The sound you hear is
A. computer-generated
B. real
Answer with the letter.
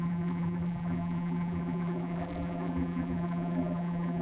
A